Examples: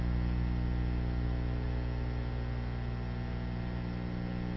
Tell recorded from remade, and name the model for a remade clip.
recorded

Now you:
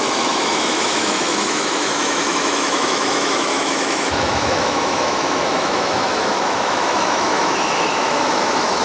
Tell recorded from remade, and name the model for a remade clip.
remade, autoencoder, DAC-VAE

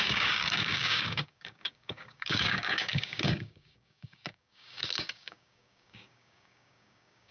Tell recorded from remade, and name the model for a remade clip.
remade, codec, DAC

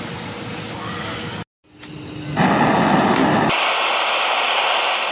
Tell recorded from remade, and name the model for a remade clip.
recorded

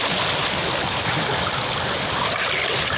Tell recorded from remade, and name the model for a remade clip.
recorded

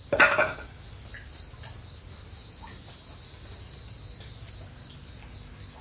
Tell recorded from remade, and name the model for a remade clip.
recorded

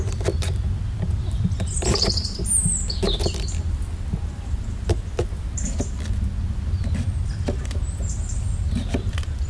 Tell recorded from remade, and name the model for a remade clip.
recorded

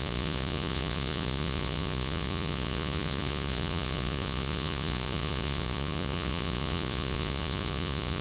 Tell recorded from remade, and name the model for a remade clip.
remade, vocoder, Vocos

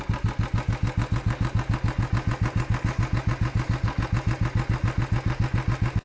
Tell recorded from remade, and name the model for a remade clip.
recorded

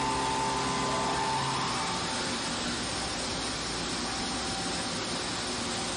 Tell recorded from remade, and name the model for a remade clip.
recorded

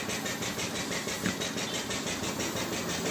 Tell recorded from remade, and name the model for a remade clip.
recorded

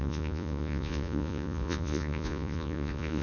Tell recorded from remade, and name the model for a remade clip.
remade, vocoder, Vocos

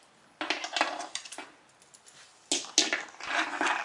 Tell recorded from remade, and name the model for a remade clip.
recorded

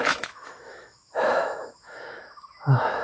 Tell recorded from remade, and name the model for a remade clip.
remade, autoencoder, DAC-VAE